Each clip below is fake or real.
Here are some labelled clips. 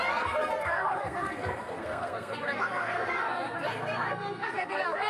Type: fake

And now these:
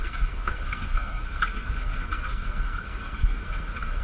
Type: fake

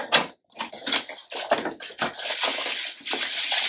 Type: real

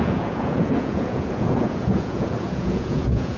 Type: fake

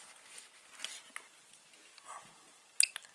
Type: real